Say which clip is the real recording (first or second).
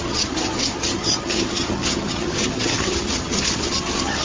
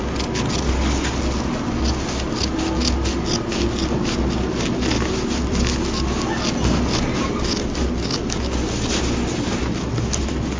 second